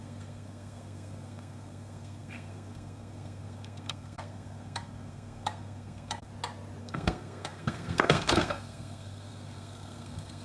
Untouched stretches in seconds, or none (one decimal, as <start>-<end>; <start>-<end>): 6.3-6.8

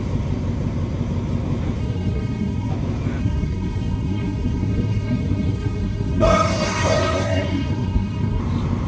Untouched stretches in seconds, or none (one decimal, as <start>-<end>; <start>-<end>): 0.0-1.8; 2.7-3.2; 8.4-8.9

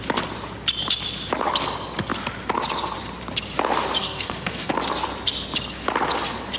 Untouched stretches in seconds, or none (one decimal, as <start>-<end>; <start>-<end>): 0.0-4.0; 4.7-6.6

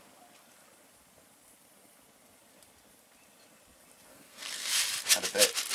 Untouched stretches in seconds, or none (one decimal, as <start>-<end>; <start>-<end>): 0.0-4.1; 4.7-5.7

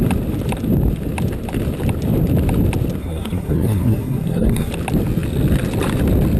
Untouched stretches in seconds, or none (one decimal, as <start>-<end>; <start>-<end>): 0.0-3.0; 4.7-6.4

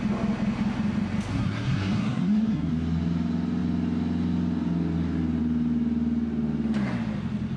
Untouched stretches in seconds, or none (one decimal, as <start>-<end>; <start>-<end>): 0.0-1.3; 2.7-7.6